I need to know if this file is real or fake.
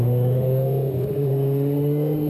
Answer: fake